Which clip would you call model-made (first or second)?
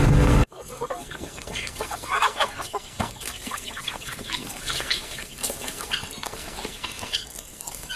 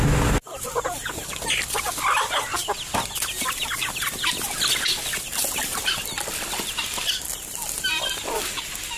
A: first